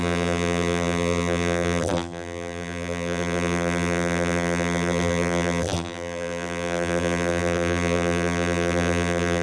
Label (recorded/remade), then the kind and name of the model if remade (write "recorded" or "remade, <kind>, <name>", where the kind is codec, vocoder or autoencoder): remade, vocoder, BigVGAN v2